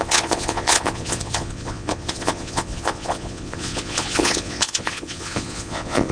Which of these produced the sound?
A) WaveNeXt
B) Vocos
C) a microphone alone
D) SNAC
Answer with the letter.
B